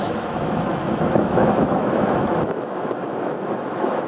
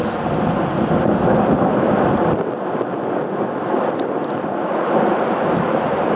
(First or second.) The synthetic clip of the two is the first